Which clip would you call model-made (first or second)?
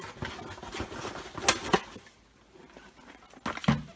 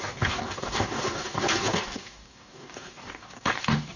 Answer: second